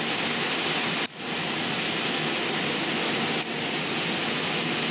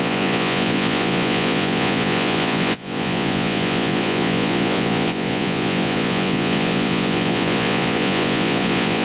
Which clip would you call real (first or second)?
first